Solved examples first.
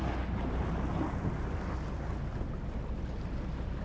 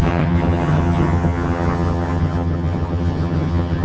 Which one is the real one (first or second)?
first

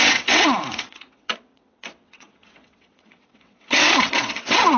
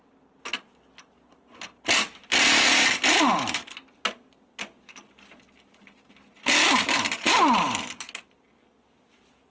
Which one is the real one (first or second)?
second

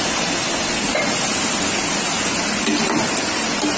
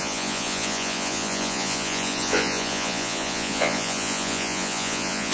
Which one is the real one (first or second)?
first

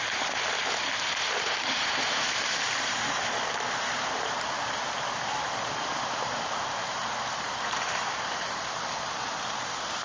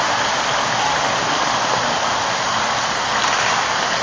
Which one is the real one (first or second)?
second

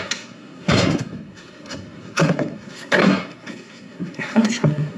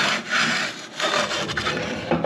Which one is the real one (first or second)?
second